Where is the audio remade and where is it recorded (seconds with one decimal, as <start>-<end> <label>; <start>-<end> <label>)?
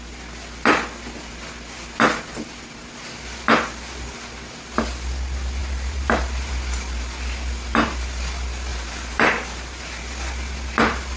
0.0-5.6 recorded; 5.6-6.5 remade; 6.5-8.7 recorded; 8.7-9.8 remade; 9.8-11.2 recorded